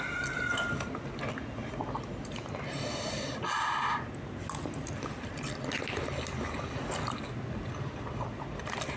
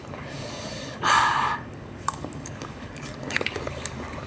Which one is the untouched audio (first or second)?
first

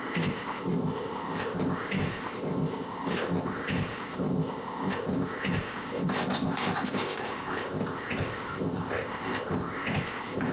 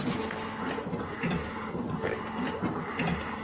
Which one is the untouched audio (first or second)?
second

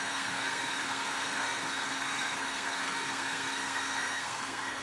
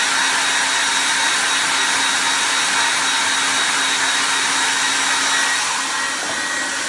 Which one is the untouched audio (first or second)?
second